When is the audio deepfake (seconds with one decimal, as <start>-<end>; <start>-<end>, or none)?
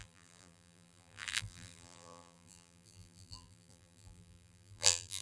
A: 0.0-5.2